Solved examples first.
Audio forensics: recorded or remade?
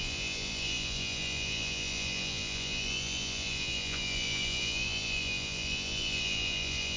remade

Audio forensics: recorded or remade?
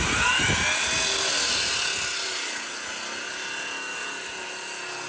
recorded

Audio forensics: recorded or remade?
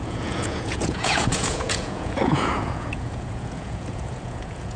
remade